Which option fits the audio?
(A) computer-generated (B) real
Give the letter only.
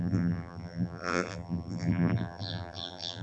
A